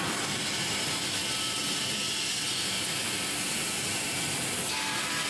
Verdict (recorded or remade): recorded